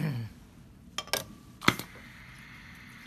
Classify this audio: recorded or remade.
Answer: recorded